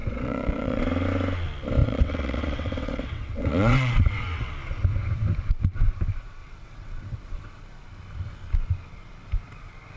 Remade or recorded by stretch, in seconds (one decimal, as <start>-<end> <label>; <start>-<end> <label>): 0.0-0.8 remade; 0.8-1.8 recorded; 1.8-4.5 remade; 4.5-6.4 recorded; 6.4-7.6 remade; 7.6-10.0 recorded